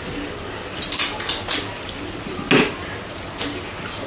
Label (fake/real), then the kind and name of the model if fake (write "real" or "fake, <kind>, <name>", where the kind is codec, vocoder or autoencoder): real